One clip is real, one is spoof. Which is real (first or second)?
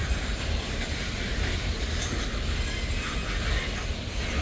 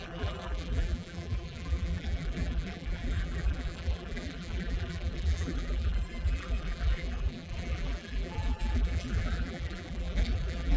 first